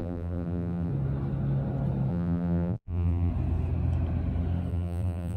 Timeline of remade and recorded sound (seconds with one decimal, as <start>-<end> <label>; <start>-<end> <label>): 0.0-0.9 remade; 0.9-2.1 recorded; 2.1-3.3 remade; 3.3-4.7 recorded; 4.7-5.4 remade